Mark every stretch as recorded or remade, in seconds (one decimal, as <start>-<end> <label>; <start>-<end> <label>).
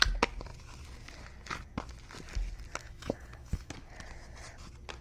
0.0-2.8 recorded; 2.8-3.7 remade; 3.7-5.0 recorded